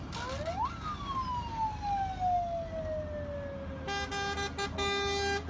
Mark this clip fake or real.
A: real